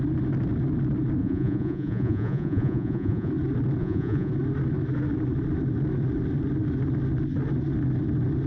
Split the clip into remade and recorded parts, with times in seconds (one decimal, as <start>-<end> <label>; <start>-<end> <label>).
0.0-1.2 recorded; 1.2-3.3 remade; 3.3-3.8 recorded; 3.8-4.3 remade; 4.3-8.5 recorded